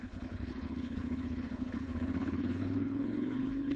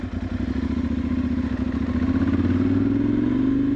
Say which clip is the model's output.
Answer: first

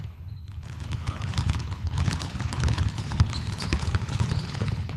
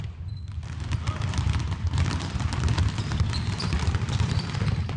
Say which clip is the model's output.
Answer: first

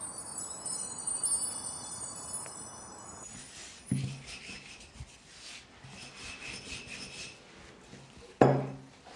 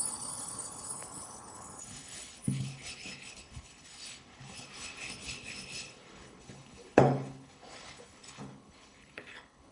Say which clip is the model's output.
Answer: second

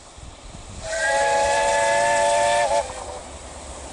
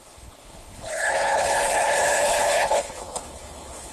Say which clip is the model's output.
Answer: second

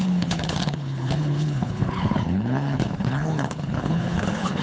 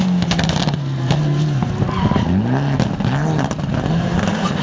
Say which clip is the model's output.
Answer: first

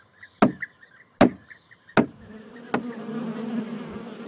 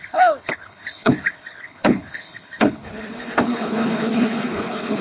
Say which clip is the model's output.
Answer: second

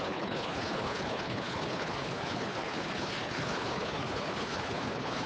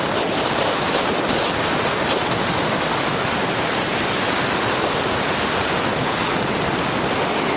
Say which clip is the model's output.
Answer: first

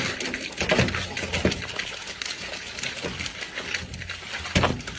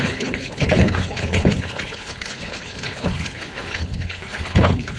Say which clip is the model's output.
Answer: second